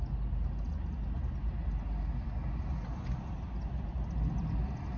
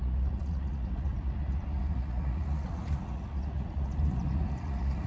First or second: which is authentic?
first